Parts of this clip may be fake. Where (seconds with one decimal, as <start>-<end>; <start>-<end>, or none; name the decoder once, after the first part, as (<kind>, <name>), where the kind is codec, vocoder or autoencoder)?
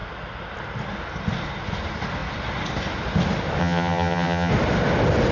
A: 3.6-4.5 (vocoder, HiFi-GAN)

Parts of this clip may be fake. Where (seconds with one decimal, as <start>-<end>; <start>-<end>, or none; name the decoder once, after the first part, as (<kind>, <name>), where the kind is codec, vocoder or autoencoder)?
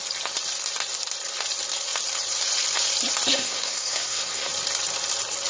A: 3.3-4.5 (codec, SNAC)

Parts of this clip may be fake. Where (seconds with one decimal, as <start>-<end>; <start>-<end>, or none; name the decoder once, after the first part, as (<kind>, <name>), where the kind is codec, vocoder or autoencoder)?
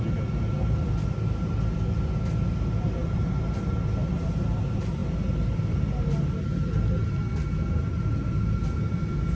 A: none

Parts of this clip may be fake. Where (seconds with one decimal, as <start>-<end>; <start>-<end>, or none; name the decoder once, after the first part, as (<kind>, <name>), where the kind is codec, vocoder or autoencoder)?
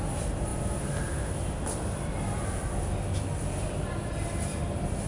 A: none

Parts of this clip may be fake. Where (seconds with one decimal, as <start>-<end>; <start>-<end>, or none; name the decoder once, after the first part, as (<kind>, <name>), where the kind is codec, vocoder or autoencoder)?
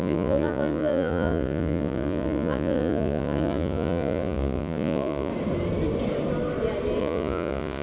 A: 0.0-5.3 (vocoder, Vocos); 7.0-7.8